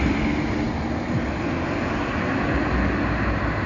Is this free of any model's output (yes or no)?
yes